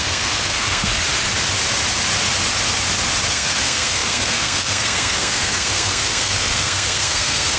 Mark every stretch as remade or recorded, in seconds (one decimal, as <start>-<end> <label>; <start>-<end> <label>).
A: 0.0-0.9 remade; 0.9-3.3 recorded; 3.3-7.6 remade